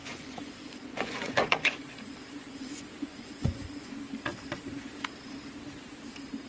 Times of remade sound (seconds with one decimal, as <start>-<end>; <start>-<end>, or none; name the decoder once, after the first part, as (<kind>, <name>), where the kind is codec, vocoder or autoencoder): 0.0-3.9 (vocoder, Vocos)